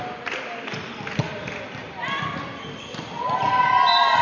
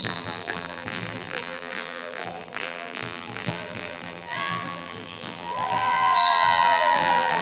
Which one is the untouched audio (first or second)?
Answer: first